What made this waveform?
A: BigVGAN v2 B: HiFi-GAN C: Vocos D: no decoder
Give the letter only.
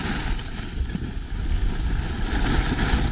D